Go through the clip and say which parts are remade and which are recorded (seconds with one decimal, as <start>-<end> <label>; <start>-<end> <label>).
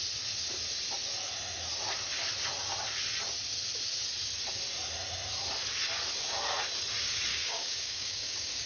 0.0-7.3 recorded; 7.3-8.7 remade